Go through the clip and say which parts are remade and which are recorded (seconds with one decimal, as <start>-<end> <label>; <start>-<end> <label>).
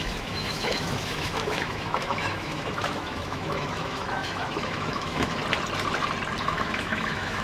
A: 0.0-5.4 remade; 5.4-6.4 recorded; 6.4-7.4 remade